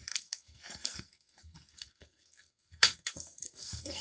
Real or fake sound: fake